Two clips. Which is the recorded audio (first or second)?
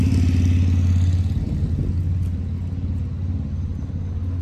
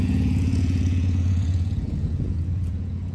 first